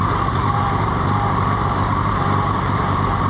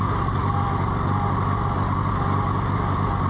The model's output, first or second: first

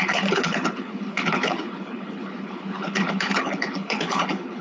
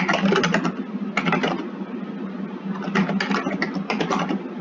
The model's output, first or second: first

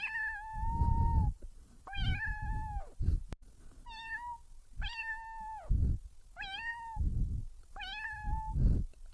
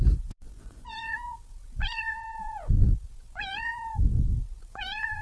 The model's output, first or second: second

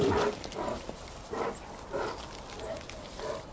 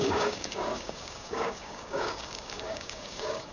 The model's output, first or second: second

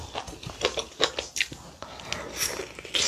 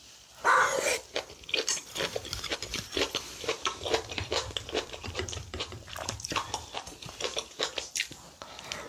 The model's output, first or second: second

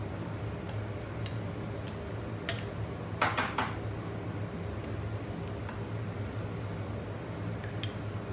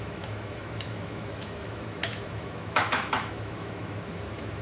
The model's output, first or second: second